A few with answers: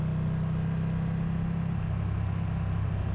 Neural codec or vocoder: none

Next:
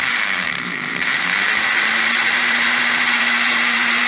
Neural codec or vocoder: vocoder, BigVGAN v2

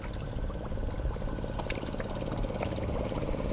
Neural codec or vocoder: none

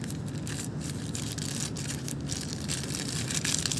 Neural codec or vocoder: none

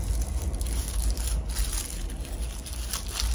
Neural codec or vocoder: none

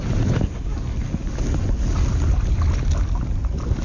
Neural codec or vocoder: none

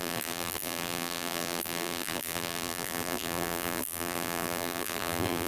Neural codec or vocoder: vocoder, BigVGAN v2